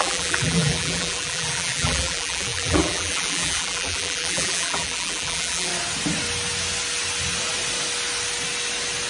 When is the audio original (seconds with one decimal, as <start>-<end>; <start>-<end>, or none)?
5.7-9.1